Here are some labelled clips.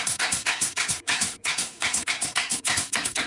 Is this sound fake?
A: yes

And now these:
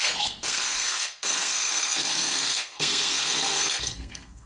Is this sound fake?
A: yes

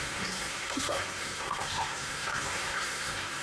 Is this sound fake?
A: yes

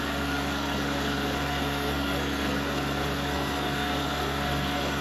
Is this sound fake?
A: yes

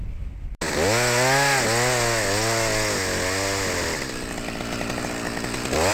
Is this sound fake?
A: no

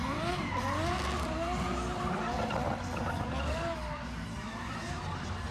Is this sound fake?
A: no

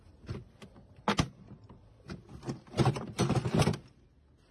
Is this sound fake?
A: no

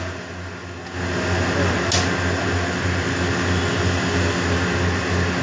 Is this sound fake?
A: no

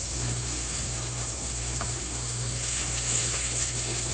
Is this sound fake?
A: yes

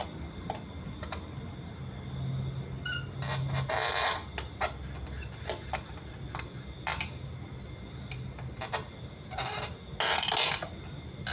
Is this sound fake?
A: no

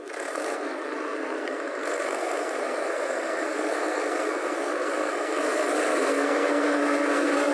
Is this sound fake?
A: yes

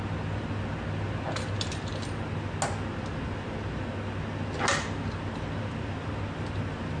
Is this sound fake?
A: no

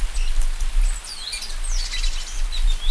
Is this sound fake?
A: no